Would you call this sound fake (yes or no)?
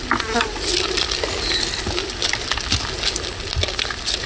no